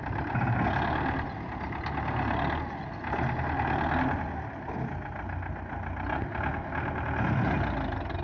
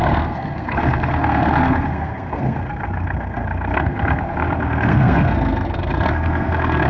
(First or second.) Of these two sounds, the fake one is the second